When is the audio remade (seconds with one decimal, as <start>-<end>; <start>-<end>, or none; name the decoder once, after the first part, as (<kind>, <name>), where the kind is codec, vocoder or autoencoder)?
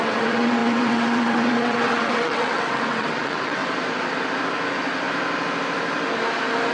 0.0-3.6 (vocoder, WaveNeXt)